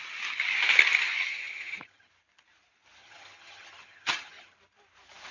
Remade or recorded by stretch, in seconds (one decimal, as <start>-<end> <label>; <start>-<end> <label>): 0.0-1.3 recorded; 1.3-2.1 remade; 2.1-3.0 recorded; 3.0-4.6 remade; 4.6-5.3 recorded

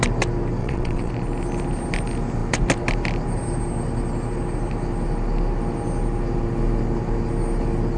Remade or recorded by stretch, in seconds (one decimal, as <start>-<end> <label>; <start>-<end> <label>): 0.0-0.6 recorded; 0.6-1.1 remade; 1.1-8.0 recorded

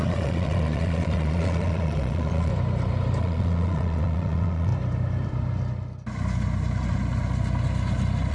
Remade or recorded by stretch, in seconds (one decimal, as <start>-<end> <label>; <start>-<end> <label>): 0.0-2.5 remade; 2.5-3.2 recorded; 3.2-4.7 remade; 4.7-8.3 recorded

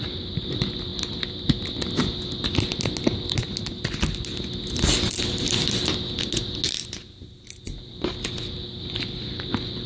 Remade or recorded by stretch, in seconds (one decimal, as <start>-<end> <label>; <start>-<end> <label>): 0.0-9.9 recorded

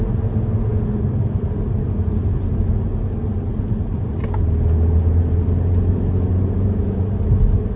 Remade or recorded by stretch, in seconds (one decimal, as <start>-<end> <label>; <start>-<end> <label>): 0.0-7.8 recorded

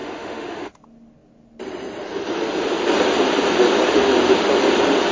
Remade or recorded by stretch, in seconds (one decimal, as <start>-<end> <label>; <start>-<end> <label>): 0.0-0.7 remade; 0.7-5.1 recorded

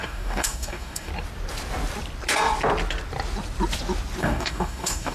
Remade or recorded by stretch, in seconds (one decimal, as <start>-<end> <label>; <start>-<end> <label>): 0.0-1.1 remade; 1.1-4.2 recorded; 4.2-5.1 remade

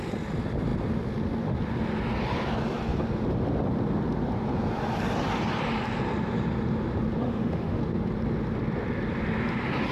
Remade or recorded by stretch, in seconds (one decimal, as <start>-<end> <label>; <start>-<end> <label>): 0.0-7.2 recorded; 7.2-7.8 remade; 7.8-9.9 recorded